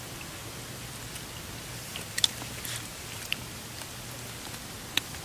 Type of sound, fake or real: real